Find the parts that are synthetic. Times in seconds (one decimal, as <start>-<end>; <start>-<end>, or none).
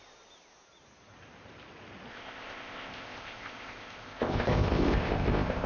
2.1-5.7